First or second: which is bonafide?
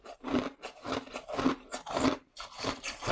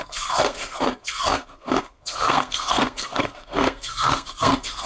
first